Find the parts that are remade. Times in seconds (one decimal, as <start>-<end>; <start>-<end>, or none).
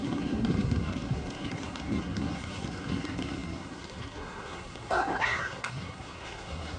0.0-6.8